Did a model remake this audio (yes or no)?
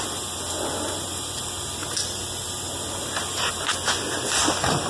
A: no